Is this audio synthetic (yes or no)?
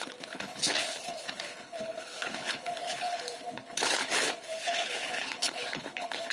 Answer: yes